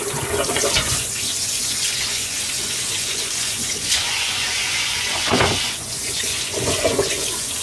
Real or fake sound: fake